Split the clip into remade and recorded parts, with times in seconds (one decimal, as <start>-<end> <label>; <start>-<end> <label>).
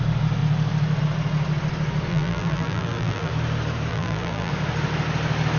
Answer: 0.0-2.1 recorded; 2.1-3.3 remade; 3.3-3.9 recorded; 3.9-4.5 remade; 4.5-5.6 recorded